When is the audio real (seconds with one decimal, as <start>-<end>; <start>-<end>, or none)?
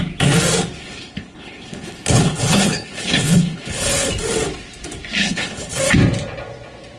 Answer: 0.0-0.8; 4.1-5.2; 5.8-7.0